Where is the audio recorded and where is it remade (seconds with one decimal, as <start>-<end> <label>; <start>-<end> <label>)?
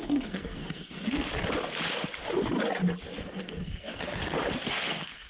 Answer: 0.0-1.3 remade; 1.3-3.2 recorded; 3.2-4.2 remade; 4.2-4.7 recorded; 4.7-5.3 remade